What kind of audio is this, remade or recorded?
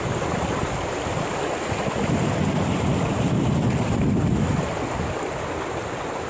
recorded